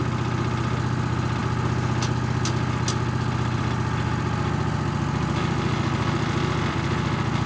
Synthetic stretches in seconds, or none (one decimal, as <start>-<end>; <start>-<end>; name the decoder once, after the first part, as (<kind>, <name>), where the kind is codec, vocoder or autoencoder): none